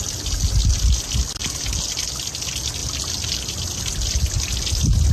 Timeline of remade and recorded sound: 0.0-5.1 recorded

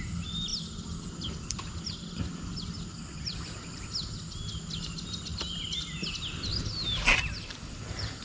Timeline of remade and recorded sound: 0.0-8.2 recorded

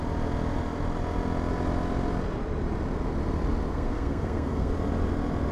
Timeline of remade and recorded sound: 0.0-3.7 recorded; 3.7-4.7 remade; 4.7-5.5 recorded

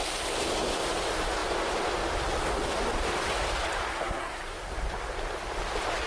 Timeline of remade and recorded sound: 0.0-3.9 recorded; 3.9-4.4 remade; 4.4-6.1 recorded

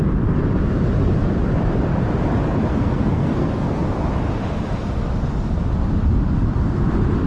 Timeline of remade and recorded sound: 0.0-2.7 recorded; 2.7-3.8 remade; 3.8-7.3 recorded

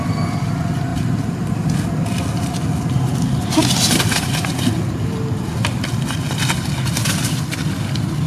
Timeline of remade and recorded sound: 0.0-8.3 recorded

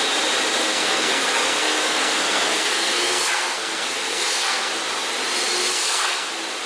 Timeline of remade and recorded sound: 0.0-0.7 recorded; 0.7-4.7 remade; 4.7-5.7 recorded; 5.7-6.3 remade; 6.3-6.7 recorded

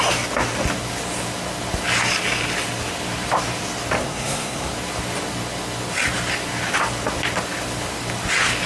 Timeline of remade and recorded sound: 0.0-4.0 recorded; 4.0-4.7 remade; 4.7-8.7 recorded